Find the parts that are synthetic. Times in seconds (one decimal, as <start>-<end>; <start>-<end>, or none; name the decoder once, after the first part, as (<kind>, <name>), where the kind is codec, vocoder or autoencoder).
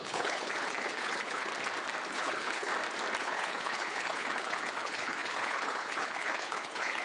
0.0-1.5 (codec, HILCodec); 2.1-2.7; 3.2-7.0